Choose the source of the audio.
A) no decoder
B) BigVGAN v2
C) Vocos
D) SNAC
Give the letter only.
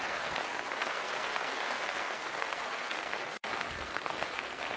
D